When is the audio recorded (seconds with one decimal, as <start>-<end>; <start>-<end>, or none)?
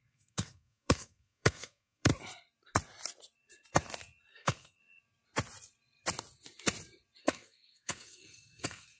2.1-4.3; 4.8-7.2